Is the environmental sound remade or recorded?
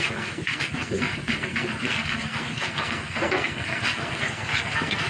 remade